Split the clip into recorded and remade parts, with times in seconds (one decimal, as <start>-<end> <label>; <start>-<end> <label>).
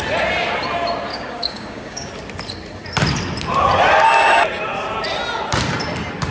0.0-1.1 recorded; 1.1-2.1 remade; 2.1-6.3 recorded